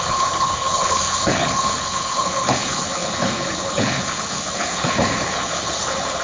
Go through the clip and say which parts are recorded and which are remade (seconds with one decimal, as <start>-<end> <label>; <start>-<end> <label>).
0.0-6.2 remade